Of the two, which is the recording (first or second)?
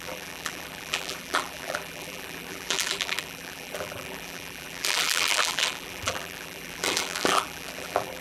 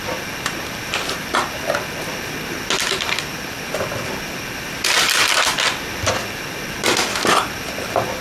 second